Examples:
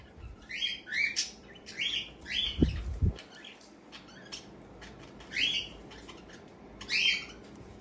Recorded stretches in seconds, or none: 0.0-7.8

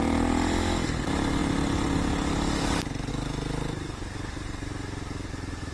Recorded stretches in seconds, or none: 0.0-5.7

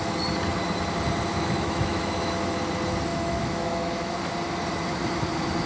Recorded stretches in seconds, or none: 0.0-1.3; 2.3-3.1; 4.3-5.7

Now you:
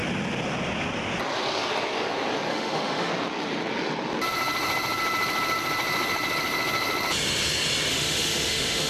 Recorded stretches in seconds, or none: 0.0-2.5; 3.1-7.9

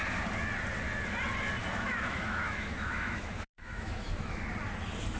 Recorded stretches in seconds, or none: 0.0-1.6; 4.4-5.2

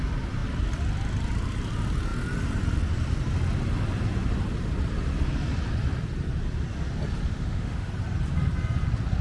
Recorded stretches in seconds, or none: 0.0-7.3; 7.9-9.2